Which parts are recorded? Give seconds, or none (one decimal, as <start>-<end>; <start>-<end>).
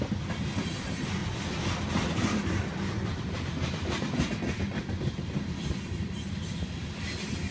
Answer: 0.0-7.5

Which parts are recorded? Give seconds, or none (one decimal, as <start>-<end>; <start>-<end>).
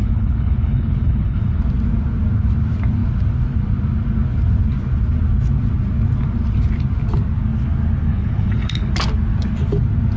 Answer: 1.6-8.1; 8.9-10.2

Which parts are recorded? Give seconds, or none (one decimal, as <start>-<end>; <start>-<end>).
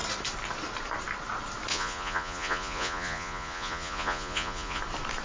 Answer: 0.0-1.7; 4.8-5.2